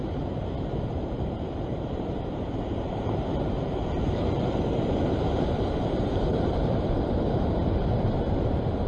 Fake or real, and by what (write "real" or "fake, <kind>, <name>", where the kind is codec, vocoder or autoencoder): fake, vocoder, BigVGAN v2